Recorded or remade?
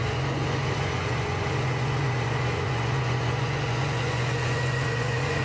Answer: remade